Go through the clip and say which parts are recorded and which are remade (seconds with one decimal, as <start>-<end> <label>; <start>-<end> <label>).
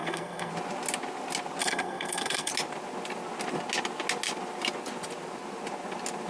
0.0-0.5 remade; 0.5-1.6 recorded; 1.6-2.5 remade; 2.5-6.3 recorded